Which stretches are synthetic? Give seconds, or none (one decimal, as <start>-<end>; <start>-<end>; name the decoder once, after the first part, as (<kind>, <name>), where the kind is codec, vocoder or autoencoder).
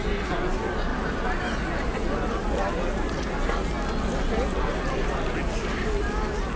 none